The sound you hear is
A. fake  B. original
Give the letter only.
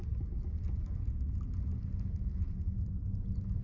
B